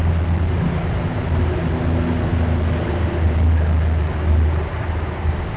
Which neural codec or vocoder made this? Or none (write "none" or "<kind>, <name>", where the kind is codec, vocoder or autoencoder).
none